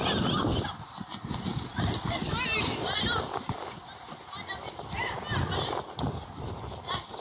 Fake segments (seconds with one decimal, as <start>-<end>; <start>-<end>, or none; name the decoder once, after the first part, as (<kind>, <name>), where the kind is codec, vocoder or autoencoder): 0.0-1.7 (vocoder, BigVGAN v2); 6.0-7.2